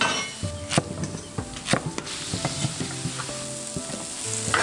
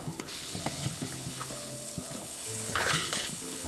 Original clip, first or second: first